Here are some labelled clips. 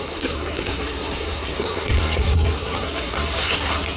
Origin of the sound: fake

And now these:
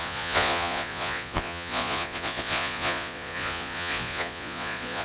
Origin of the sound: fake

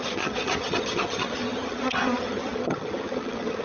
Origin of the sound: fake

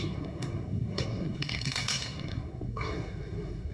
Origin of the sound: fake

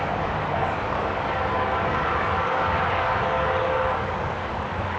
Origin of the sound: fake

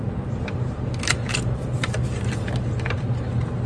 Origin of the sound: real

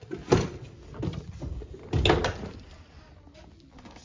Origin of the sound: real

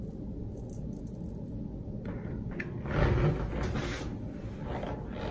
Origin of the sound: real